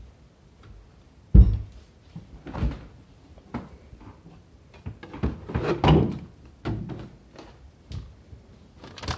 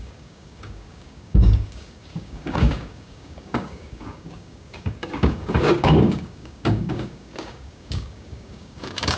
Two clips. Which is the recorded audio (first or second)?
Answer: first